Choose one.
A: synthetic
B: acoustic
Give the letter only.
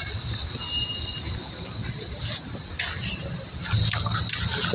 B